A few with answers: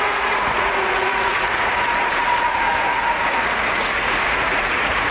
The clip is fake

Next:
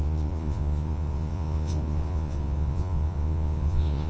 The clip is fake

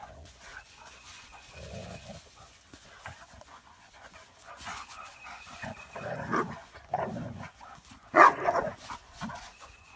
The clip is fake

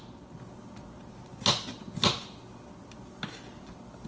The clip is real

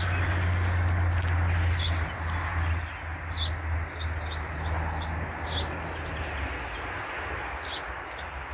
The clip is real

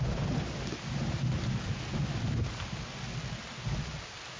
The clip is real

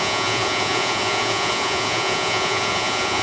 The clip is fake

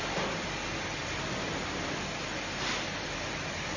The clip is real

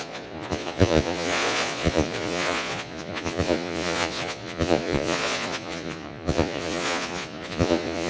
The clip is fake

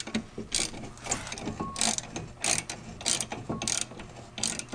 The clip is real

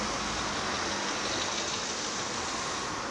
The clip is real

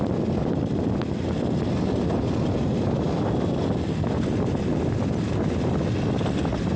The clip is real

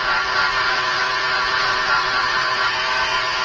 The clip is fake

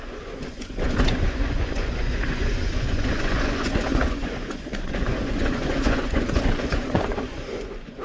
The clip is fake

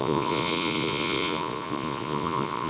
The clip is fake